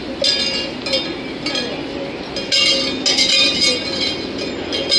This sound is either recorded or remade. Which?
recorded